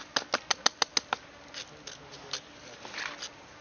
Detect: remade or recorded recorded